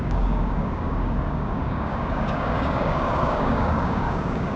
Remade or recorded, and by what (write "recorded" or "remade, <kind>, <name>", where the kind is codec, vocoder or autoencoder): remade, codec, DAC